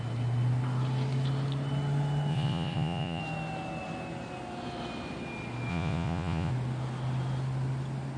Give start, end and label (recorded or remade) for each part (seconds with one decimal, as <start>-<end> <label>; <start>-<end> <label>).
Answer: 0.0-2.3 recorded; 2.3-3.2 remade; 3.2-5.7 recorded; 5.7-6.5 remade; 6.5-8.2 recorded